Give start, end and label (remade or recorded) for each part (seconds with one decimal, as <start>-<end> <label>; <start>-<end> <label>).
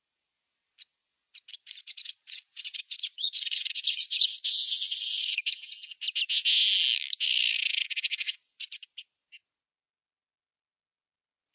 0.0-1.5 recorded; 1.5-5.5 remade; 5.5-11.5 recorded